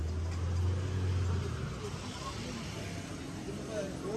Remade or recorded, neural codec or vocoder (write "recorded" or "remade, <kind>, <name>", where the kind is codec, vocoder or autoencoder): recorded